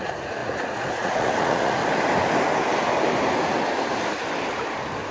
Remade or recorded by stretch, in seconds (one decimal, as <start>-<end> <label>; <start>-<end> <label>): 0.0-1.8 remade; 1.8-5.1 recorded